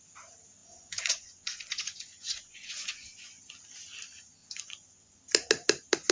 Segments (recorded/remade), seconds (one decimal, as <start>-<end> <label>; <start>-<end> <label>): 0.0-0.6 recorded; 0.6-3.4 remade; 3.4-4.4 recorded; 4.4-5.2 remade; 5.2-6.1 recorded